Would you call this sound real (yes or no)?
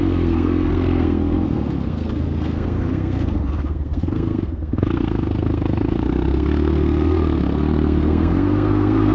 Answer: no